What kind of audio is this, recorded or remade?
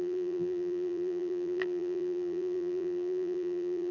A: remade